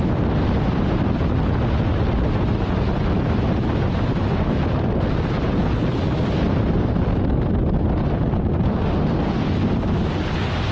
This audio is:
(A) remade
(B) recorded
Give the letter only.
B